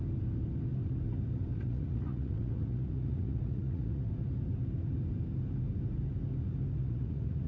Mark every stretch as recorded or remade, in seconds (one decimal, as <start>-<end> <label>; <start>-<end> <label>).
0.0-1.5 recorded; 1.5-4.1 remade; 4.1-6.8 recorded; 6.8-7.5 remade